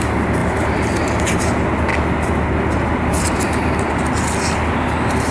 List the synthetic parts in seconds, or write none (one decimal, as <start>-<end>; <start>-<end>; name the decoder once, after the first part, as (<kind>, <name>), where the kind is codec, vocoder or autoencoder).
0.4-0.9 (vocoder, BigVGAN v2)